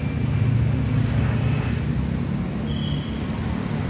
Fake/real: real